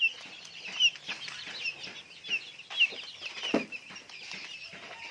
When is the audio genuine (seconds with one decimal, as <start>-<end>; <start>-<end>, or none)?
1.7-5.1